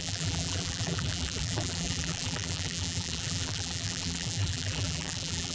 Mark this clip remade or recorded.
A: remade